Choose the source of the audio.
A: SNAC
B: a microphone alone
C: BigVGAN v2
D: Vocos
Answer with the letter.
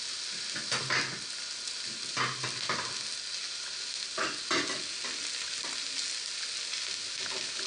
B